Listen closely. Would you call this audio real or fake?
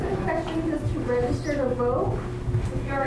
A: real